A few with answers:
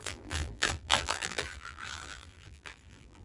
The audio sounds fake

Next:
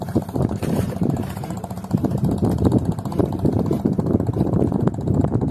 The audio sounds fake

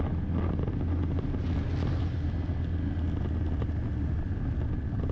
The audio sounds real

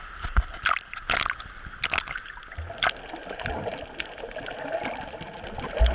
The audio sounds real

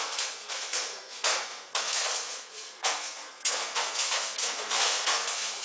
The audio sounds fake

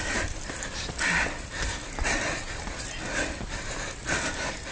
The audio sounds real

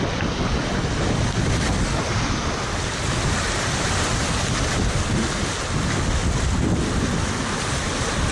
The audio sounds real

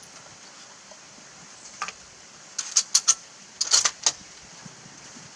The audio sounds real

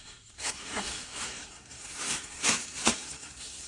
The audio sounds fake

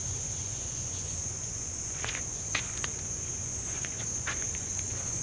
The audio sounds fake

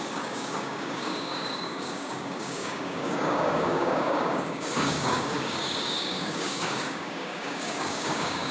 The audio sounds fake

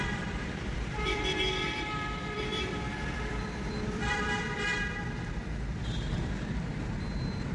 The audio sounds fake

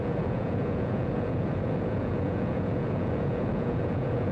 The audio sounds fake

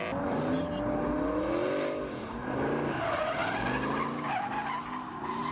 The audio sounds real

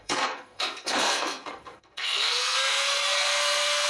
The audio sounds fake